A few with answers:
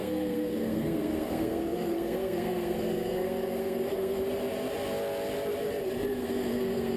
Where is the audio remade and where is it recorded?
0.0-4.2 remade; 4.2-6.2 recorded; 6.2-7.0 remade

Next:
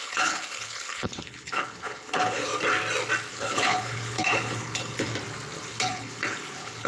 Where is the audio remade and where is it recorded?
0.0-2.5 remade; 2.5-3.3 recorded; 3.3-5.1 remade; 5.1-5.7 recorded; 5.7-6.9 remade

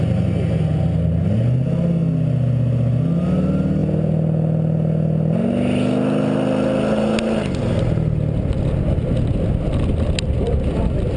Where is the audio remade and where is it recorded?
0.0-11.2 recorded

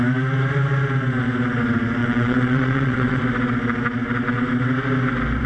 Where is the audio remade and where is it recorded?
0.0-2.0 recorded; 2.0-3.2 remade; 3.2-5.5 recorded

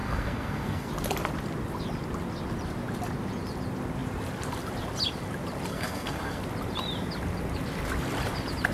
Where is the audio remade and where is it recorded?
0.0-0.9 remade; 0.9-5.7 recorded; 5.7-6.4 remade; 6.4-8.7 recorded

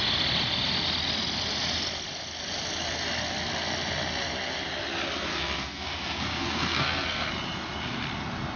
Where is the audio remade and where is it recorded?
0.0-5.3 recorded; 5.3-7.3 remade; 7.3-8.6 recorded

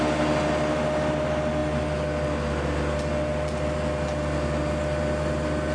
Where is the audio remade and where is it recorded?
0.0-5.7 recorded

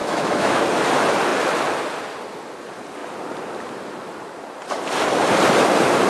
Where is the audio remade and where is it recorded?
0.0-0.6 remade; 0.6-6.1 recorded